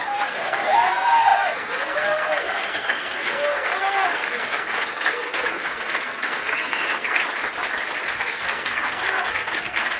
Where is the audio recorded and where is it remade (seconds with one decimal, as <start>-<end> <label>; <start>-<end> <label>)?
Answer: 0.0-7.2 remade; 7.2-8.2 recorded; 8.2-10.0 remade